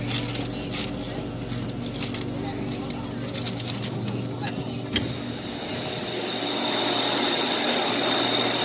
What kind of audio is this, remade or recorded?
recorded